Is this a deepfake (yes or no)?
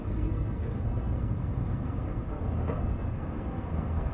yes